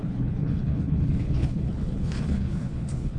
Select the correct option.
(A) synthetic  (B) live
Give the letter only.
A